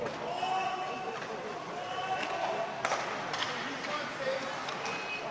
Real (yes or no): yes